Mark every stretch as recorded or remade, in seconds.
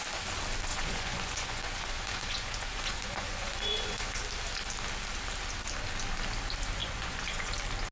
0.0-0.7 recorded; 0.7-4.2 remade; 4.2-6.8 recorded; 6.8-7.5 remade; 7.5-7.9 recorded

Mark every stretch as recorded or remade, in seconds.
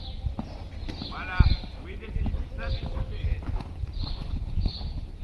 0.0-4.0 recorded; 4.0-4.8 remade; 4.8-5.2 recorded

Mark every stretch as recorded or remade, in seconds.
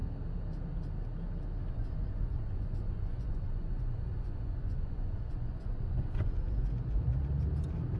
0.0-1.7 recorded; 1.7-7.2 remade; 7.2-8.0 recorded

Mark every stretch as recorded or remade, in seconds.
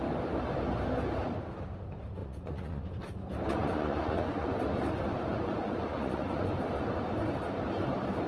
0.0-2.2 recorded; 2.2-2.8 remade; 2.8-3.5 recorded; 3.5-4.6 remade; 4.6-5.2 recorded; 5.2-6.5 remade; 6.5-8.3 recorded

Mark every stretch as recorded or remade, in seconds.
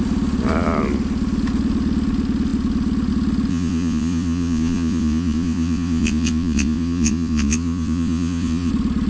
0.0-3.5 recorded; 3.5-8.7 remade; 8.7-9.1 recorded